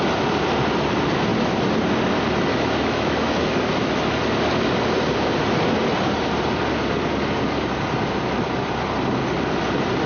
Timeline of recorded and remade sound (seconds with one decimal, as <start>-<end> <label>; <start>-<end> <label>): 0.0-2.5 recorded; 2.5-4.0 remade; 4.0-10.1 recorded